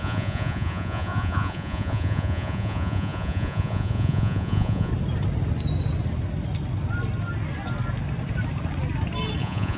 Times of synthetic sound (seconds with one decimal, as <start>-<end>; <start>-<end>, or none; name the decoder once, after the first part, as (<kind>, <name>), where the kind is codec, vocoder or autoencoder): 0.0-4.9 (vocoder, Vocos); 9.4-9.8